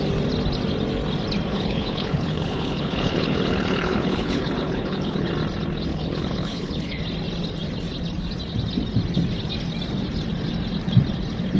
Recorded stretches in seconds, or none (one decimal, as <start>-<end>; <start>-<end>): 0.0-1.5; 5.3-5.9; 7.0-11.6